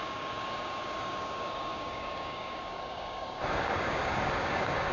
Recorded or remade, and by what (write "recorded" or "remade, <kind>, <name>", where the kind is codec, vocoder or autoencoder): remade, codec, DAC